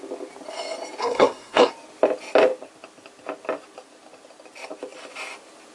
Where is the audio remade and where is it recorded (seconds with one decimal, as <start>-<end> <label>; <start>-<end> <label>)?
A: 0.0-1.0 recorded; 1.0-1.7 remade; 1.7-5.7 recorded